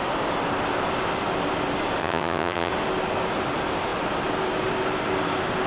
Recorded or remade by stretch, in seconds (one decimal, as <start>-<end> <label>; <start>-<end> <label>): 0.0-2.0 recorded; 2.0-2.7 remade; 2.7-5.7 recorded